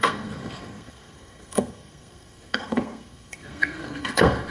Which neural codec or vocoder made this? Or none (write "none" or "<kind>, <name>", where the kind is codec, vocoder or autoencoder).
codec, SNAC